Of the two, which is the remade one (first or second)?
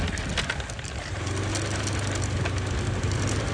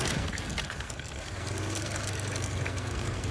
second